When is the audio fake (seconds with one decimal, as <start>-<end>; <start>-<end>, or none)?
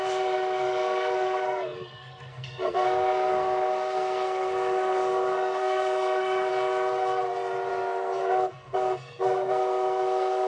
0.0-6.5; 7.7-10.5